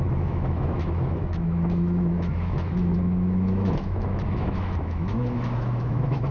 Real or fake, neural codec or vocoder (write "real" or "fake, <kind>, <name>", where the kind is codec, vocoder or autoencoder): fake, autoencoder, DAC-VAE